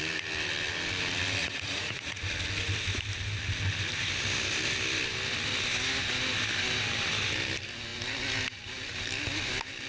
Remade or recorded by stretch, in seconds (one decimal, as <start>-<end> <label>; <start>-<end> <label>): 0.0-1.4 recorded; 1.4-2.2 remade; 2.2-9.9 recorded